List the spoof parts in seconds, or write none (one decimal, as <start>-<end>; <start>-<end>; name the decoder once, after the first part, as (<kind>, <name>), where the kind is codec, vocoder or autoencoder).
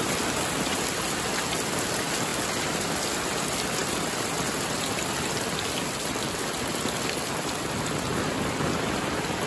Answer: 3.8-4.6 (vocoder, BigVGAN v2); 8.1-9.0